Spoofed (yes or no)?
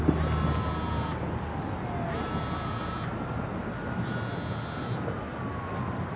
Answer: no